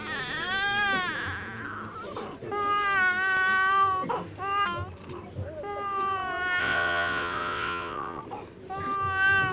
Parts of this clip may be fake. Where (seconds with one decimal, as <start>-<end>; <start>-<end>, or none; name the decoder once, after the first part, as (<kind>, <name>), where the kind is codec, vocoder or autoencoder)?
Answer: 6.6-8.2 (vocoder, WaveNeXt)